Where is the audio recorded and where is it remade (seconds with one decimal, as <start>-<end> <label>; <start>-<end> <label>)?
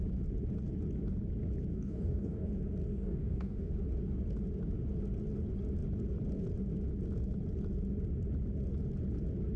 0.0-1.7 recorded; 1.7-2.5 remade; 2.5-2.9 recorded; 2.9-3.7 remade; 3.7-9.6 recorded